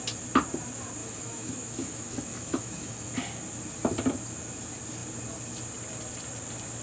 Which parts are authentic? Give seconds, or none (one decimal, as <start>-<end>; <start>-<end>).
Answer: 0.0-1.0; 3.1-6.8